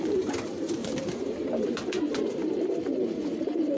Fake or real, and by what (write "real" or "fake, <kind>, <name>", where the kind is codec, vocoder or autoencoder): fake, vocoder, BigVGAN v2